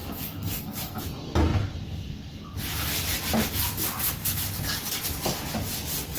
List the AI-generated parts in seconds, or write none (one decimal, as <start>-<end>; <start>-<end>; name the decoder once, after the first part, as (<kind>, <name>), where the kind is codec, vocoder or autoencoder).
0.0-1.0 (codec, SNAC)